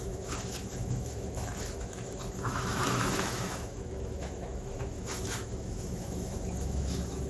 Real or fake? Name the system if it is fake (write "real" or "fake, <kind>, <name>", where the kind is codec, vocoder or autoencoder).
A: fake, autoencoder, DAC-VAE